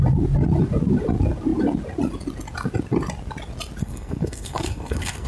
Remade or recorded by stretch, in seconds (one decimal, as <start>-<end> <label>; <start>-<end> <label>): 0.0-3.8 recorded; 3.8-5.3 remade